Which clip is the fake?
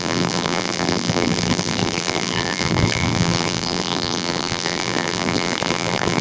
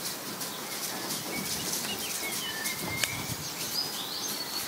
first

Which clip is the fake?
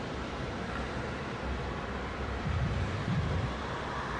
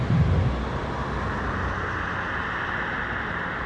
first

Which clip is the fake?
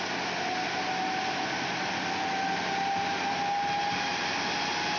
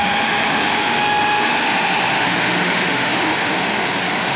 second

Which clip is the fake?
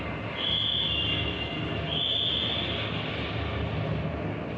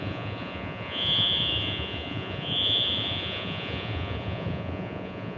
second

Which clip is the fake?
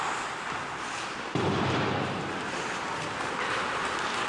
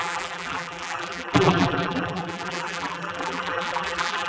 second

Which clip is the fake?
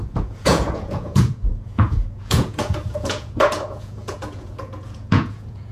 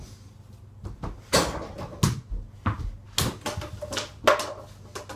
first